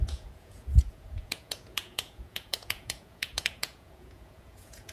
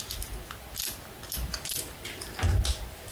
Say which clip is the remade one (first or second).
first